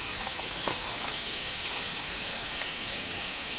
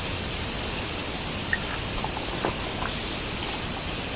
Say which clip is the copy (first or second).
first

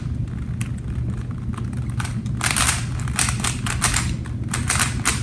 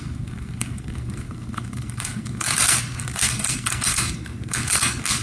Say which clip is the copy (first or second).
second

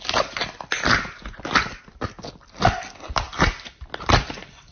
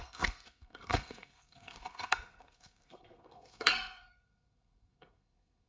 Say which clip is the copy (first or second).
second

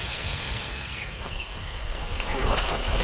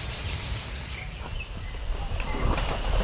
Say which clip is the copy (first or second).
first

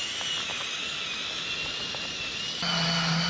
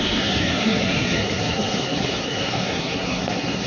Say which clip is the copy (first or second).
second